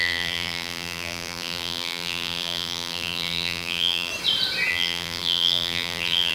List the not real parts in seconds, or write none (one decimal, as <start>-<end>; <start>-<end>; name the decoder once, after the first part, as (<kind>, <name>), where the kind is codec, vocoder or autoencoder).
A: 0.0-4.1 (vocoder, BigVGAN v2); 4.7-6.3